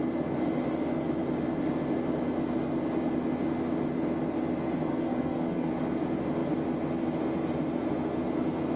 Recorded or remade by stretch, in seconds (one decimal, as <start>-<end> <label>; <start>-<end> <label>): 0.0-4.9 recorded; 4.9-5.7 remade; 5.7-8.8 recorded